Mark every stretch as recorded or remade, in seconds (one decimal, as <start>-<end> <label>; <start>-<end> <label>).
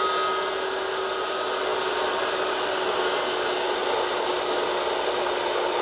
0.0-5.8 recorded